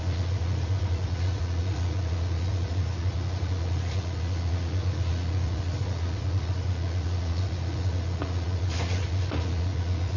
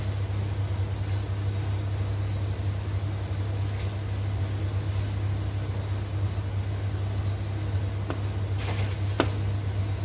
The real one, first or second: second